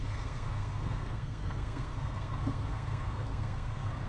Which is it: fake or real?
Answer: fake